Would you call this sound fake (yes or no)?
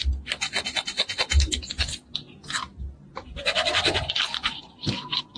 no